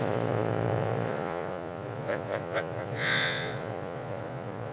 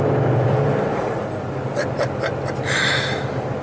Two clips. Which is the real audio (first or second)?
second